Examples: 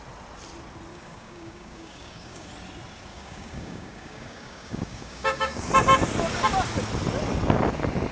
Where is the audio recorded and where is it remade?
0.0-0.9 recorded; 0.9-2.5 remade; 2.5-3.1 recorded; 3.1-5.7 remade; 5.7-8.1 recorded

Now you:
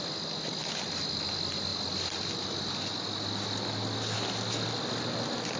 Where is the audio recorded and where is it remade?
0.0-5.6 recorded

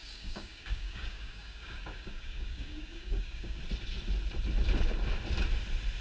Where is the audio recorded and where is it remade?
0.0-3.6 remade; 3.6-6.0 recorded

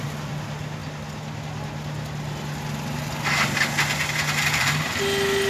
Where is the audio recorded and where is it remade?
0.0-5.5 recorded

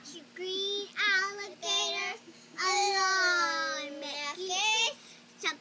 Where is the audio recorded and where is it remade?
0.0-2.0 recorded; 2.0-3.4 remade; 3.4-5.6 recorded